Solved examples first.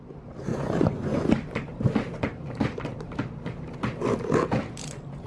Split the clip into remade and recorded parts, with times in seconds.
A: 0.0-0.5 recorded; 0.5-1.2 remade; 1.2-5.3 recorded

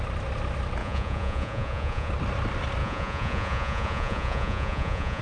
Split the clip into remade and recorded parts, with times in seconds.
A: 0.0-0.8 recorded; 0.8-2.1 remade; 2.1-2.8 recorded; 2.8-5.2 remade

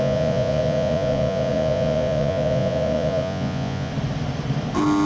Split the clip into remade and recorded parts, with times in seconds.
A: 0.0-3.9 remade; 3.9-5.1 recorded

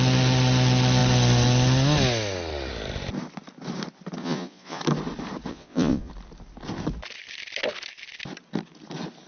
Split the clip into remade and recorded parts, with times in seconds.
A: 0.0-4.2 recorded; 4.2-4.8 remade; 4.8-5.5 recorded; 5.5-6.1 remade; 6.1-9.3 recorded

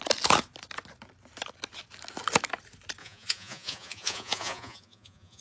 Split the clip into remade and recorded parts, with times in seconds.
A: 0.0-3.0 recorded; 3.0-5.4 remade

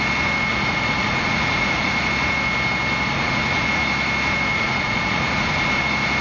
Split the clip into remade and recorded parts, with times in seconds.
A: 0.0-0.5 recorded; 0.5-2.1 remade; 2.1-3.1 recorded; 3.1-3.8 remade; 3.8-4.5 recorded; 4.5-5.8 remade; 5.8-6.2 recorded